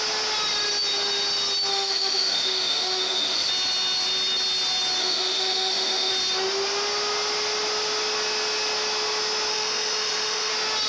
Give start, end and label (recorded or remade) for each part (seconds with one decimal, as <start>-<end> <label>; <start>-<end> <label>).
0.0-1.7 recorded; 1.7-3.5 remade; 3.5-5.0 recorded; 5.0-6.1 remade; 6.1-9.5 recorded; 9.5-10.5 remade; 10.5-10.9 recorded